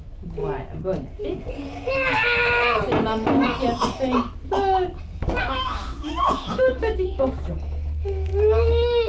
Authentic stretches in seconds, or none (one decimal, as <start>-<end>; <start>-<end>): 0.4-5.4